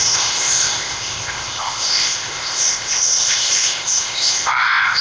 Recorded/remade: remade